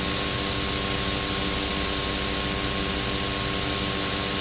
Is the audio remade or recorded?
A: recorded